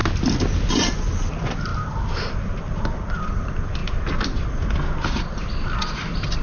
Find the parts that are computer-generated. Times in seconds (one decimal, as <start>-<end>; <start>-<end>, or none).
none